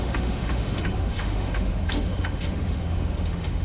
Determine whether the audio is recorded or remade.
remade